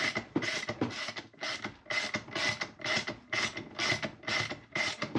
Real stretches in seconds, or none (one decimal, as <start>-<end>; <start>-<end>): 1.4-4.5